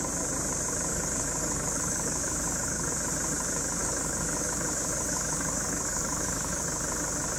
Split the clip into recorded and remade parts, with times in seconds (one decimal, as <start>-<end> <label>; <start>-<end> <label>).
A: 0.0-0.9 recorded; 0.9-2.9 remade; 2.9-3.8 recorded; 3.8-6.6 remade; 6.6-7.4 recorded